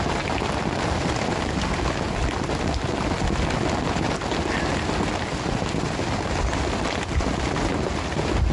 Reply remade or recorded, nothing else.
recorded